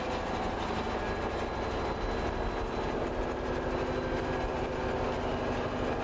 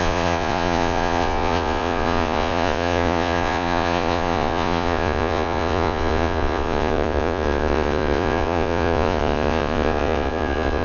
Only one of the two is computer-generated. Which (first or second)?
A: second